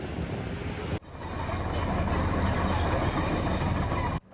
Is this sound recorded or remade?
recorded